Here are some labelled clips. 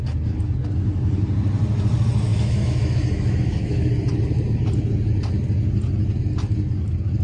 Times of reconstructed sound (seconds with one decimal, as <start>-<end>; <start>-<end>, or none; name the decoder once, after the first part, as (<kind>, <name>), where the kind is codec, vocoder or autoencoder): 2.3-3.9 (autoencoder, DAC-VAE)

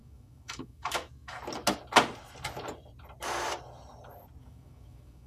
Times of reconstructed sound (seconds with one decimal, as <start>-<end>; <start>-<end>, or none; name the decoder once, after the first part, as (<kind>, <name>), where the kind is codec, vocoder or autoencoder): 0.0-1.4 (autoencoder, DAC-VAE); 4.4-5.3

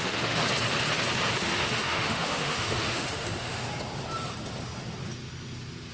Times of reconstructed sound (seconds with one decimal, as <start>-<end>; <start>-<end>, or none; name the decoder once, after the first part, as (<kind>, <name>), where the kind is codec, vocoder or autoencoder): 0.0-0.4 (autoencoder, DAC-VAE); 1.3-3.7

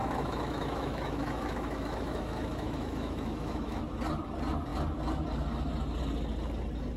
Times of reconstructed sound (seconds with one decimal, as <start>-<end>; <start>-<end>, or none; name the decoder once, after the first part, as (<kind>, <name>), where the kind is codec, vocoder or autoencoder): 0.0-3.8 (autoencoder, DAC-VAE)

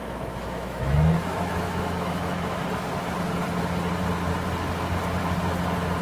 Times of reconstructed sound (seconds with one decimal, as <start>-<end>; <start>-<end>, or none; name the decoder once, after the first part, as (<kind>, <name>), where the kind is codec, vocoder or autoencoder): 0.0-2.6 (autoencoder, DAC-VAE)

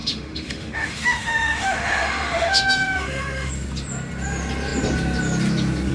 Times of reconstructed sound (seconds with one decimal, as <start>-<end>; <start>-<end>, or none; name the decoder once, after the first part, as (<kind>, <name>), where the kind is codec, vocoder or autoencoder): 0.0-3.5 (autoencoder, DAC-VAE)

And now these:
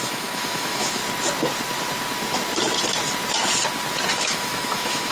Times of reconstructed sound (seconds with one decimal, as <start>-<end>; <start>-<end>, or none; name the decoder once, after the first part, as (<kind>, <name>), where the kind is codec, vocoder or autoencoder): 0.0-1.0 (autoencoder, DAC-VAE); 4.1-5.1

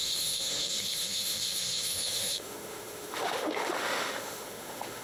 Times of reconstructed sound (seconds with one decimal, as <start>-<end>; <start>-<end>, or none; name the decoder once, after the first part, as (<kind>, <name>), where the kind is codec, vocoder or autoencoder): 0.0-5.0 (autoencoder, DAC-VAE)